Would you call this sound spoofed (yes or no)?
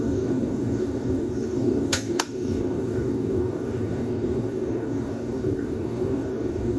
yes